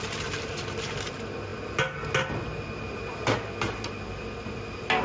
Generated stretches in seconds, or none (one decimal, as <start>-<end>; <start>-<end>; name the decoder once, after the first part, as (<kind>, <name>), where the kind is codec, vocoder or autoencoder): none